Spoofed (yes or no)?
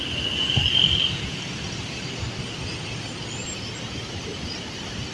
no